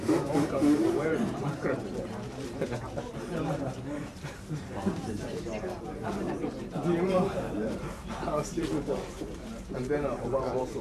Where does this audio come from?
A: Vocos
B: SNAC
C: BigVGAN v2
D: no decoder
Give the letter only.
C